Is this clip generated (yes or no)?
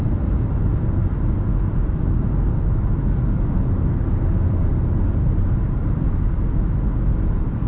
no